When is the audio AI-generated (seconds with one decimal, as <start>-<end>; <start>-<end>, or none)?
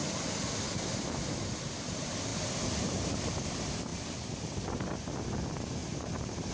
0.0-1.5; 2.3-3.4; 3.9-4.9; 5.8-6.5